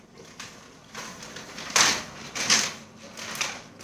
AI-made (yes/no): no